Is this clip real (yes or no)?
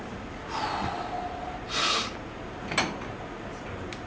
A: yes